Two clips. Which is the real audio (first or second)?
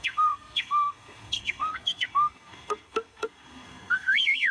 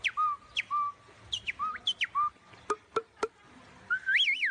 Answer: second